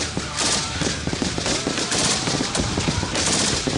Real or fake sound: fake